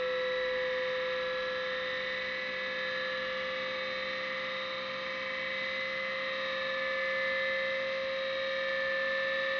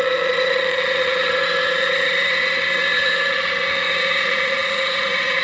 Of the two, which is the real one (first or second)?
first